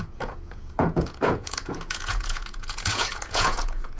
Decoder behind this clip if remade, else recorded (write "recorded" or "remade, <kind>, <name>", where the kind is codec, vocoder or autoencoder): remade, vocoder, Vocos